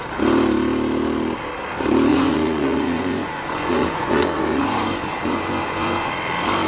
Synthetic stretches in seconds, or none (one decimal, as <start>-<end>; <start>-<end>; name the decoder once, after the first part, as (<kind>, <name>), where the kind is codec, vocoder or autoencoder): 2.1-6.1 (vocoder, Vocos)